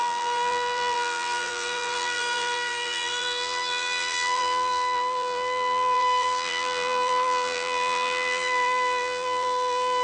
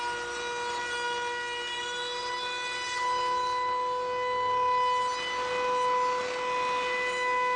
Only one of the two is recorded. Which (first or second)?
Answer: second